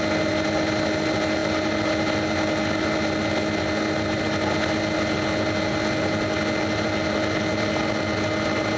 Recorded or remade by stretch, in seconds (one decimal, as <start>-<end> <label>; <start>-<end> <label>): 0.0-8.8 recorded